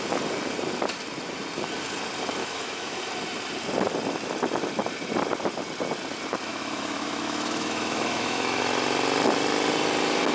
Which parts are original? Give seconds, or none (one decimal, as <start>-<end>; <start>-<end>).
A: 0.0-2.4; 3.0-6.5; 8.6-10.3